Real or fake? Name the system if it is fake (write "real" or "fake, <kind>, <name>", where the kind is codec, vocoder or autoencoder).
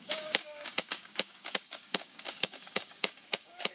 fake, codec, DAC